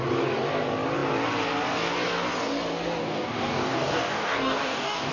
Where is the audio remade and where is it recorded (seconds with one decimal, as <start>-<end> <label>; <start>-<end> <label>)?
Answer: 0.0-3.0 recorded; 3.0-5.1 remade